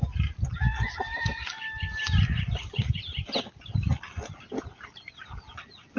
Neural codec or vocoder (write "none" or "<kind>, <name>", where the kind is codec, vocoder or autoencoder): none